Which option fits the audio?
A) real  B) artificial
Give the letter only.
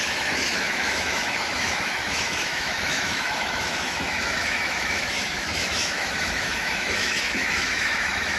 B